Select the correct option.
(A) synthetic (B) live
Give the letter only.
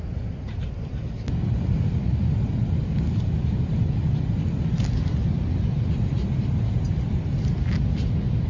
B